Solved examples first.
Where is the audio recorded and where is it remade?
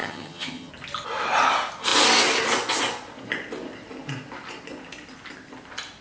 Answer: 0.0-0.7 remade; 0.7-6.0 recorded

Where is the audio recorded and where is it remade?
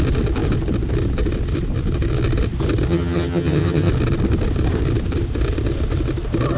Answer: 0.0-2.9 recorded; 2.9-3.9 remade; 3.9-6.6 recorded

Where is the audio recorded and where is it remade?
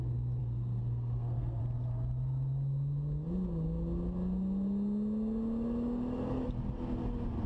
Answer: 0.0-0.4 recorded; 0.4-1.6 remade; 1.6-7.5 recorded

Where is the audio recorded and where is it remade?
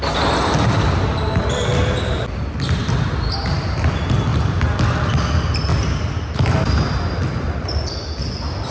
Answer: 0.0-4.3 recorded; 4.3-5.1 remade; 5.1-5.7 recorded; 5.7-7.9 remade; 7.9-8.7 recorded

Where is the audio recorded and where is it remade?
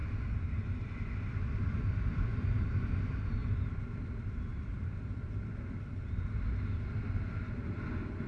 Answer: 0.0-1.1 remade; 1.1-2.3 recorded; 2.3-2.9 remade; 2.9-3.4 recorded; 3.4-4.0 remade; 4.0-4.5 recorded; 4.5-5.8 remade; 5.8-8.3 recorded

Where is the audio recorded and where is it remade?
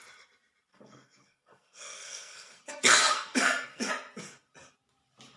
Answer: 0.0-0.7 recorded; 0.7-3.9 remade; 3.9-5.4 recorded